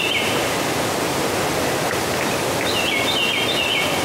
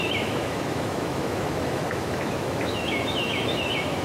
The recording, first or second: first